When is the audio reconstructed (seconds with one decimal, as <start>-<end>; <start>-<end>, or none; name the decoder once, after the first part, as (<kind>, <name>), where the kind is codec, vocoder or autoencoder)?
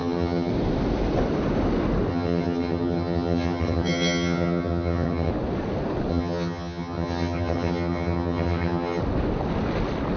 0.0-0.5 (vocoder, HiFi-GAN); 2.1-5.3; 6.1-9.0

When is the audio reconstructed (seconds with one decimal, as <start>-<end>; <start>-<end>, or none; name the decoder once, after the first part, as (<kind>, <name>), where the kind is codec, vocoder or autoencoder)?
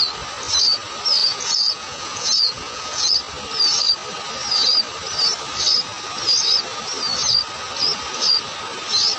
1.2-3.1 (vocoder, Vocos)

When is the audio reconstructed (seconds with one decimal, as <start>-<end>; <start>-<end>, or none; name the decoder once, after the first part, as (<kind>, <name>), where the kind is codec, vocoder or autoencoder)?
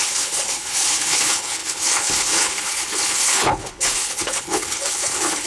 0.0-5.5 (codec, HILCodec)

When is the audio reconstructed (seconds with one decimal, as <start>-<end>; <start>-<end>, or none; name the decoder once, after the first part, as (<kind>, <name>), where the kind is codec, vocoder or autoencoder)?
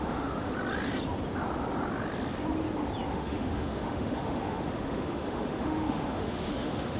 0.0-0.5 (autoencoder, DAC-VAE); 3.1-7.0